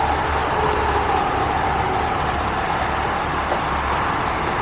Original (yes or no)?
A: yes